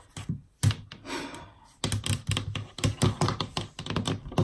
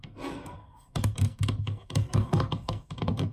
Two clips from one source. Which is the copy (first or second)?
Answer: second